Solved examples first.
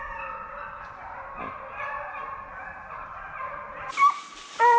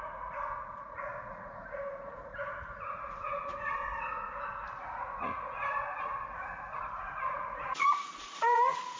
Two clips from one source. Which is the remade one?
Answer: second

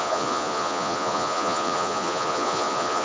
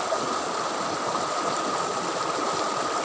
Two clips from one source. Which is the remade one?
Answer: first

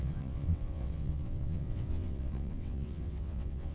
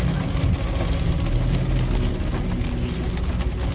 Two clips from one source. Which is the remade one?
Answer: first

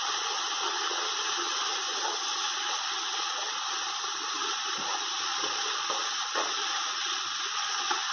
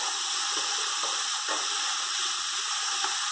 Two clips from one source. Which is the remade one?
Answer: first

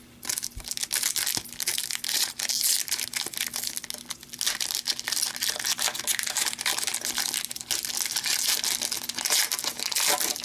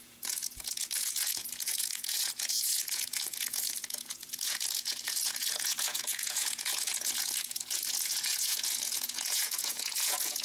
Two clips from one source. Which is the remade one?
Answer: second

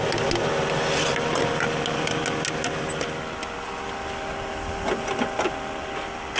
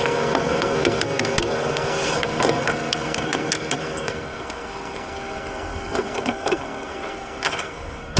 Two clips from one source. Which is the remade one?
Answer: second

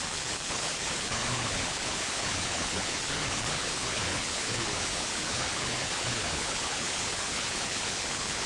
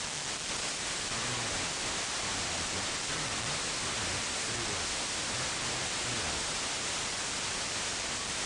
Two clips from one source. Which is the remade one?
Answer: first